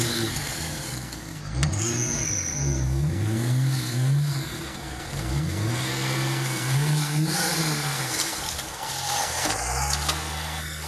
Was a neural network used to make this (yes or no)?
yes